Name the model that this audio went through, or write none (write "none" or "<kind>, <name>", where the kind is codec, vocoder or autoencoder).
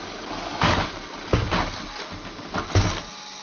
none